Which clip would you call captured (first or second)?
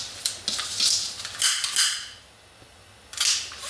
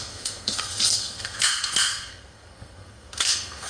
first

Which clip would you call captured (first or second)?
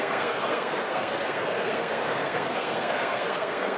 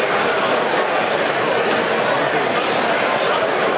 second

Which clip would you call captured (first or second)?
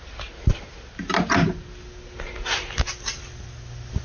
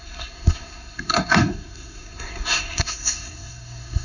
first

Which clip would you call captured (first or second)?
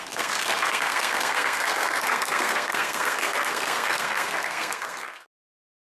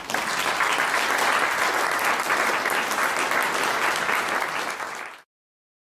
second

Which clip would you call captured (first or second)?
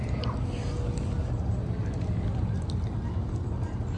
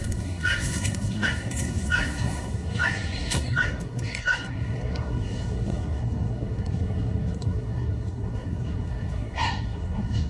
first